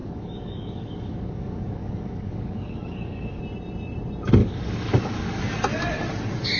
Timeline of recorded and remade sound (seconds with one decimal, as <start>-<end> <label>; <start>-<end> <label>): 0.0-3.4 remade; 3.4-4.4 recorded; 4.4-5.4 remade; 5.4-6.6 recorded